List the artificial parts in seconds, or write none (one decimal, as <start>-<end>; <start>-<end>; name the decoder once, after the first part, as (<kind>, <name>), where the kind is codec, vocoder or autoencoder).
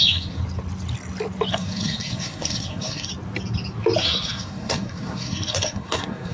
0.0-0.4 (codec, SNAC); 1.5-3.1; 4.0-6.3